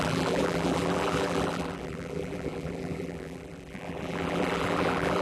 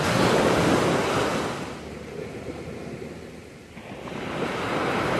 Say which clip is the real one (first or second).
second